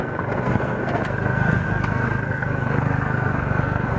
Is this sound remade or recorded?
remade